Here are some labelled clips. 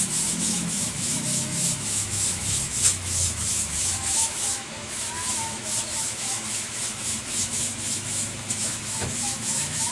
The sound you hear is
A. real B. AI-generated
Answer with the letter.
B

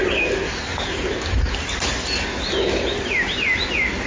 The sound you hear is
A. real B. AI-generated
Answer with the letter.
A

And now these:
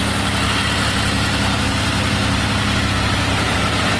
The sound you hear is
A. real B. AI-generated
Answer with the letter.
A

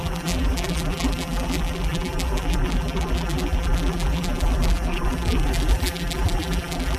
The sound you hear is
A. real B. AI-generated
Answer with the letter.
B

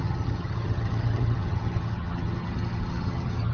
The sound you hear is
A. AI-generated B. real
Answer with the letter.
A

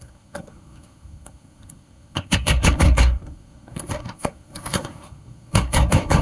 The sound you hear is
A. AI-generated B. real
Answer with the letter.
A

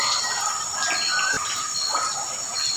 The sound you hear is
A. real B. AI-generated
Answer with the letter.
A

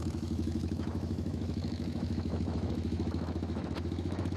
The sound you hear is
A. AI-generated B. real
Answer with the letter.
A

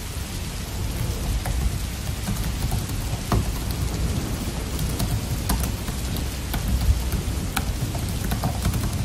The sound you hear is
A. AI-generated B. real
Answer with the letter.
B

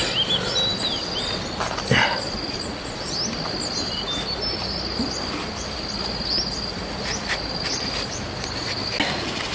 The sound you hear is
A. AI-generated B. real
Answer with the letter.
B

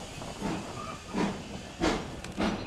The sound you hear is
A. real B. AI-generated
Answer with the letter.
A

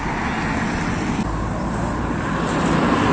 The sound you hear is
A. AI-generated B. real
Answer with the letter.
B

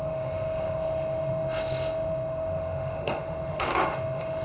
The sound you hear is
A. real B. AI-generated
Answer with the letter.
B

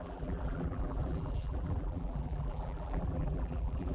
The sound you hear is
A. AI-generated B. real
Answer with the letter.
A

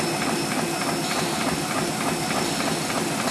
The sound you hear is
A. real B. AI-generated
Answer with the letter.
A